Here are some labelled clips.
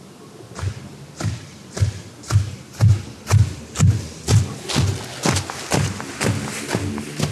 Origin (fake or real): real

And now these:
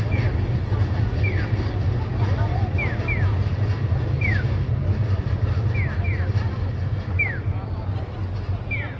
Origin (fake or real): real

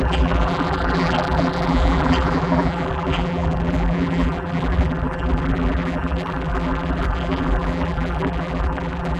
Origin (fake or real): fake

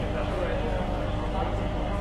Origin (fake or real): real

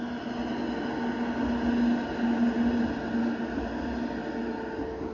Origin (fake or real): real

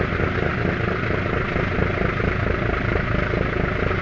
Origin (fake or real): real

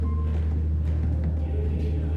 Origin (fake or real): real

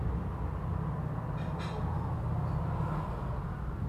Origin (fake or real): real